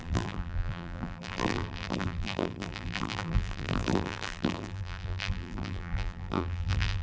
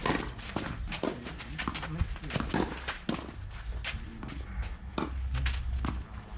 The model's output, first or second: first